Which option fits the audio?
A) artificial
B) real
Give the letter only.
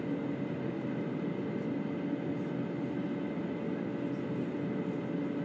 B